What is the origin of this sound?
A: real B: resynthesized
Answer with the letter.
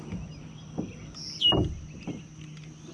A